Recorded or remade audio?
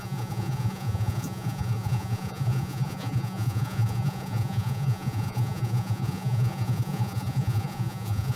remade